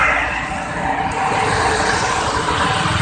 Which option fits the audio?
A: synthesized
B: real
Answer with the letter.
B